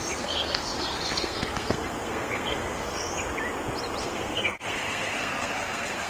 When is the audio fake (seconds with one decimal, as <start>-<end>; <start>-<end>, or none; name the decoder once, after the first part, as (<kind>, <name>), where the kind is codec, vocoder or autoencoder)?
0.0-3.1 (codec, SNAC); 4.0-6.1